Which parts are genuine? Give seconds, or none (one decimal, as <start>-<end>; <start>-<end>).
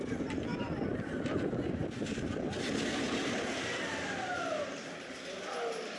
0.0-6.0